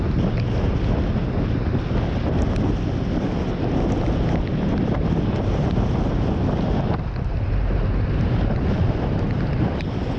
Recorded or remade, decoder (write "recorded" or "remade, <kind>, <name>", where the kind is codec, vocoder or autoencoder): recorded